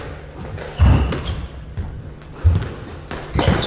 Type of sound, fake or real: real